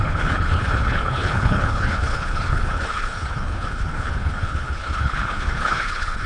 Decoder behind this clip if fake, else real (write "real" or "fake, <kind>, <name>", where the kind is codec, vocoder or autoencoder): fake, codec, HILCodec